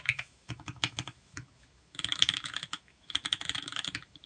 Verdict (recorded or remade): remade